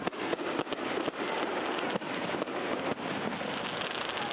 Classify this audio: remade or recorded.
recorded